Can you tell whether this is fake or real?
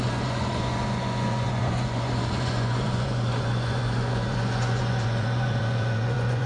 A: fake